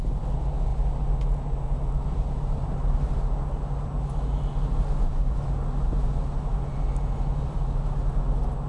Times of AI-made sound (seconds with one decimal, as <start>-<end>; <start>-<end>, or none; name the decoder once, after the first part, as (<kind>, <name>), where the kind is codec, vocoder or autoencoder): none

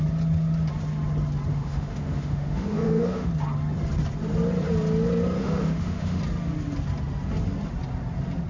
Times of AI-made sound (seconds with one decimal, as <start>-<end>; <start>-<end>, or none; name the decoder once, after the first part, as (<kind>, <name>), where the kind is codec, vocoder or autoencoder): 1.5-3.3 (autoencoder, DAC-VAE); 5.4-6.2

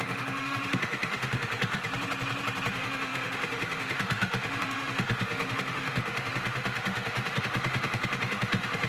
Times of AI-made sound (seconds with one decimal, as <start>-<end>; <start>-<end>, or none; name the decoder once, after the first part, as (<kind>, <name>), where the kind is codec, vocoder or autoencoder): 0.0-1.8 (autoencoder, DAC-VAE); 2.7-8.9

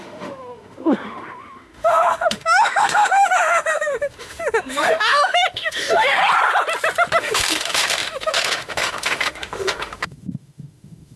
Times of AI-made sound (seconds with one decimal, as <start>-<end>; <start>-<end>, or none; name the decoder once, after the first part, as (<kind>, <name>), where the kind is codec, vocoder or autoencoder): 0.0-6.2 (autoencoder, DAC-VAE); 7.2-11.2

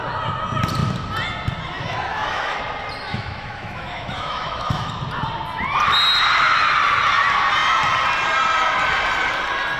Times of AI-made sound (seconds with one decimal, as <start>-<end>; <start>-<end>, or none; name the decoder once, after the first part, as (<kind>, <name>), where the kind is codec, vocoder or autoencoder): 2.1-2.6 (autoencoder, DAC-VAE); 3.1-4.9

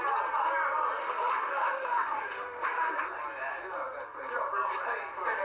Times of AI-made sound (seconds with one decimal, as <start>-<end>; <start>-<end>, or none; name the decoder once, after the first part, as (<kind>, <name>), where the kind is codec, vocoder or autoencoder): 1.0-3.0 (autoencoder, DAC-VAE)